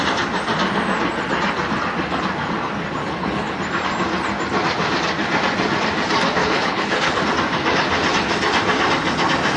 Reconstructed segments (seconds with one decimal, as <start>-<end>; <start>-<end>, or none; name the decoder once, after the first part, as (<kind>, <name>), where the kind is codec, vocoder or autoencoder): 3.0-3.6 (codec, HILCodec); 6.4-7.2